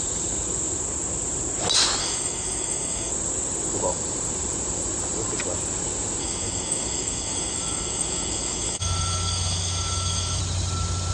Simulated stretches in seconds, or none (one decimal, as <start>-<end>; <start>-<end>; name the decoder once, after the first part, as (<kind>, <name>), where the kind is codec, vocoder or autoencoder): 2.0-3.1 (codec, DAC); 6.2-10.4